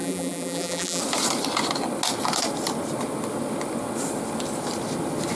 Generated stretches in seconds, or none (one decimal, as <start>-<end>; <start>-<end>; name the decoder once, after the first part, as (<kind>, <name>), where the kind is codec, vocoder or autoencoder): 0.0-1.0 (vocoder, BigVGAN v2)